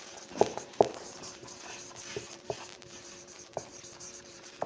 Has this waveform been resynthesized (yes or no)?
yes